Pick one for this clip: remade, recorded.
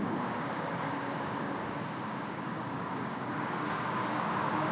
remade